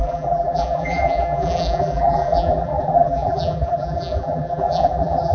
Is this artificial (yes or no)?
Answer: yes